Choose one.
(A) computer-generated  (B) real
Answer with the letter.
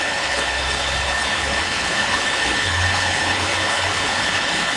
A